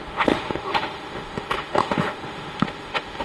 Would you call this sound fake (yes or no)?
yes